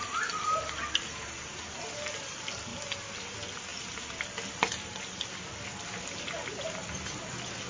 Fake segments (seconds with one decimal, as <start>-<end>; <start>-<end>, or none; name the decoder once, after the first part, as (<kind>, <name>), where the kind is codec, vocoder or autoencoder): none